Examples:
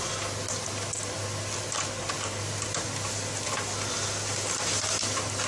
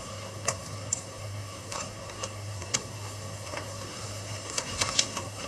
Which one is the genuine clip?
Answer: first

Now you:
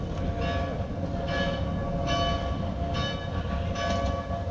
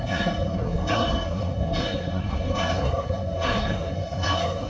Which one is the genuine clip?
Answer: first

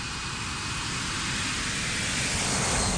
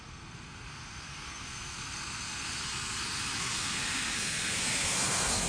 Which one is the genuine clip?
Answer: first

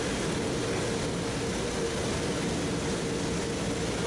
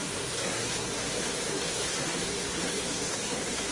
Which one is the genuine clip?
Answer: first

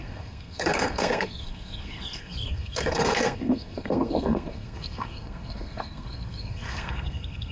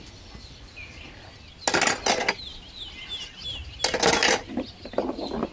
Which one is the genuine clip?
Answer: second